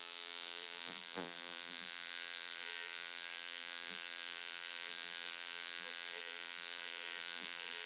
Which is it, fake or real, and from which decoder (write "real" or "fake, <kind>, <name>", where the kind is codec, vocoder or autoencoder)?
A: fake, vocoder, BigVGAN v2